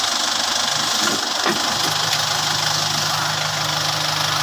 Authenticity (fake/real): real